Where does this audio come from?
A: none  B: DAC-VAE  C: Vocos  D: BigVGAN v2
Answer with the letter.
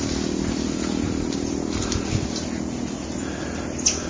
A